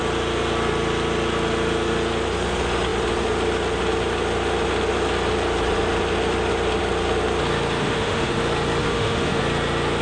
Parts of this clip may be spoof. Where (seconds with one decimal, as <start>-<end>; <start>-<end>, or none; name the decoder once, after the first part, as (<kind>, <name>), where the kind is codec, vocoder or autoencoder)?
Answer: 7.8-8.4 (autoencoder, DAC-VAE); 8.8-9.4